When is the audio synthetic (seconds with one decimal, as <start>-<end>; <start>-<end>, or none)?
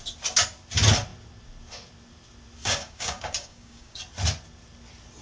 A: 2.6-4.0